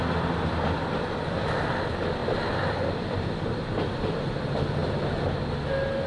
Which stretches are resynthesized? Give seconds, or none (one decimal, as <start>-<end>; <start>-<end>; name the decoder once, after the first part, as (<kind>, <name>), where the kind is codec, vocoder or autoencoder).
1.3-4.8 (vocoder, BigVGAN v2)